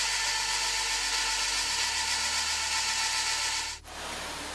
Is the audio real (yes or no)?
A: yes